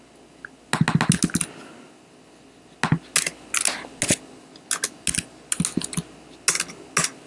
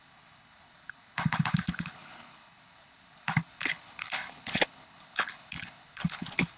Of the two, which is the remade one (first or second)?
second